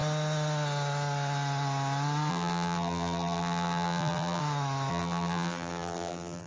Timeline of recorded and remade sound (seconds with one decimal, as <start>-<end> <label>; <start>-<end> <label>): 0.0-2.3 recorded; 2.3-4.4 remade; 4.4-4.9 recorded; 4.9-6.5 remade